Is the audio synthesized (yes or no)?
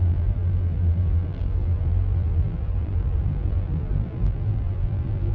yes